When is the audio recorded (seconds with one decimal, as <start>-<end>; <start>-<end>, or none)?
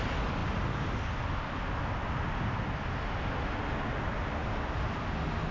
0.0-5.5